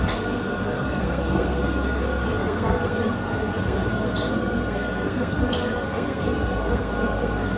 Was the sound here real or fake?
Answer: fake